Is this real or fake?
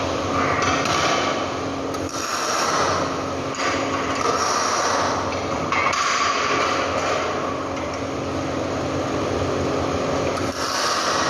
real